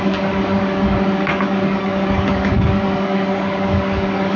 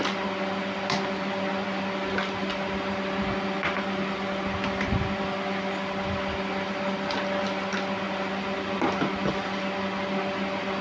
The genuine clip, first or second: second